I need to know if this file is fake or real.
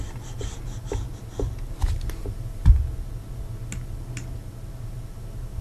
real